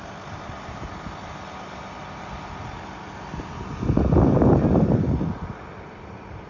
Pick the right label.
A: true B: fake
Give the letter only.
A